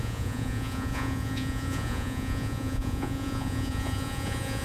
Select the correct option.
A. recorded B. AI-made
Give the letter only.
B